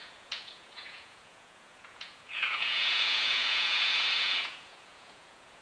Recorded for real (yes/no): no